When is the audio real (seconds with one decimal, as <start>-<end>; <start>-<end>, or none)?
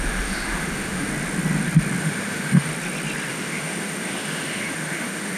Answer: 1.1-2.0; 2.7-3.3